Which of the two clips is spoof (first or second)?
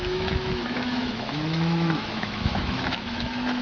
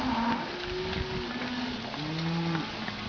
first